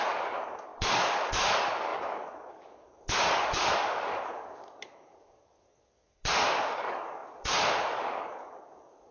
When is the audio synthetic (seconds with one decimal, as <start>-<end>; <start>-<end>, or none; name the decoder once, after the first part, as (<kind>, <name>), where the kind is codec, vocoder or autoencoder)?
0.0-9.1 (codec, DAC)